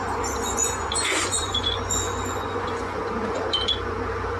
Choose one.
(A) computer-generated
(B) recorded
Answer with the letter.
A